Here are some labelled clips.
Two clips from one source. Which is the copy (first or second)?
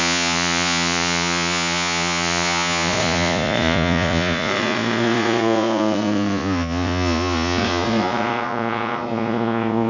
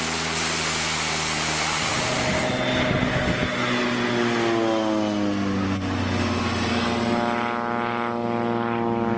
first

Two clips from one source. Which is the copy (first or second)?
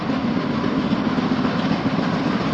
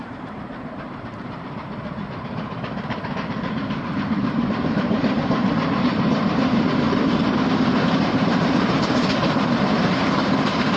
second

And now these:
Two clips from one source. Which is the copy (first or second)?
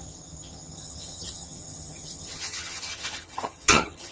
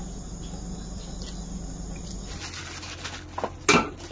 first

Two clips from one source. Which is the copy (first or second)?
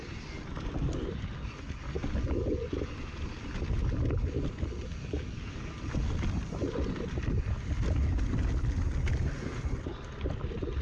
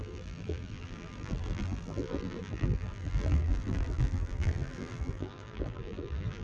second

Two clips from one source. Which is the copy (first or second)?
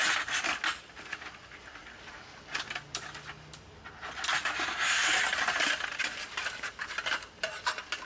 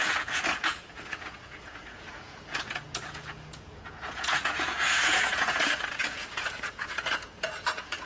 second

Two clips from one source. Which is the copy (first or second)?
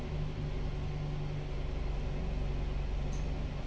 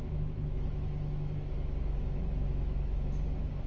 second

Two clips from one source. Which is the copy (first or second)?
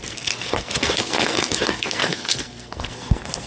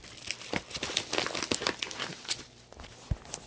first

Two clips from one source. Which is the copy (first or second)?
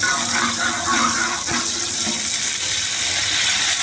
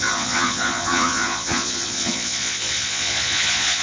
second